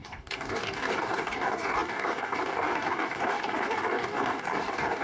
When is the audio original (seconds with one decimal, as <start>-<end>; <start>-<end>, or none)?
none